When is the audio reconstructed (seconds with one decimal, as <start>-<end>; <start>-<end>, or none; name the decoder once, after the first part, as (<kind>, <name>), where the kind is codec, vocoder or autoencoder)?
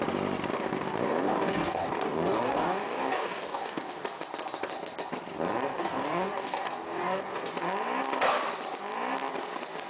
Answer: 0.5-4.0 (codec, DAC); 5.7-7.5